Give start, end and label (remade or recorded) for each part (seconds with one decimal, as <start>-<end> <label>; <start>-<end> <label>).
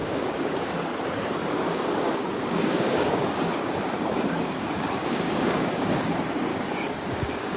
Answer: 0.0-0.9 remade; 0.9-1.4 recorded; 1.4-6.0 remade; 6.0-6.5 recorded; 6.5-7.6 remade